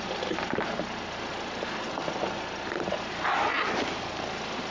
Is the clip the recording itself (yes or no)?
yes